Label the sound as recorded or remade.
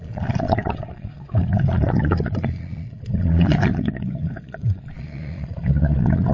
remade